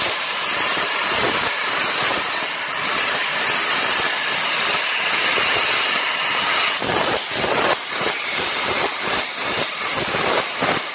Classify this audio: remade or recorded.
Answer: recorded